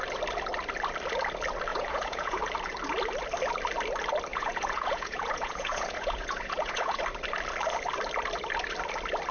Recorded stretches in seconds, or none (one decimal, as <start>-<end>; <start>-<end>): 0.0-1.7; 2.4-4.3; 7.0-9.3